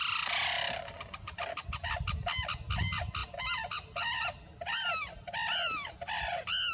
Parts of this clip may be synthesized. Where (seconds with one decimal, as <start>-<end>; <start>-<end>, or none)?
none